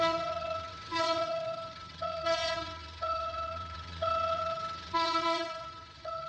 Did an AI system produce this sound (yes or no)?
yes